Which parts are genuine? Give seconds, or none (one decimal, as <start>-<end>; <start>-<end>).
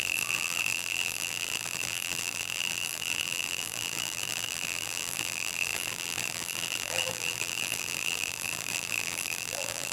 none